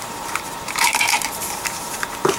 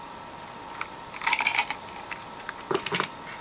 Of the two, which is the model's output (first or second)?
first